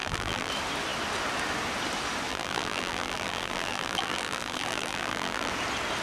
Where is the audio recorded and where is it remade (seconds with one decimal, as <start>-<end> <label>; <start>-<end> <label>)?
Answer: 0.0-0.5 remade; 0.5-2.3 recorded; 2.3-5.5 remade; 5.5-6.0 recorded